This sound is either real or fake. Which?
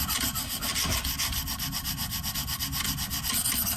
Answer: real